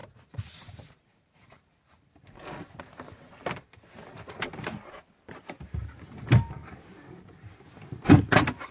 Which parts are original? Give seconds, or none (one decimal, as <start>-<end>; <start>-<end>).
4.9-6.6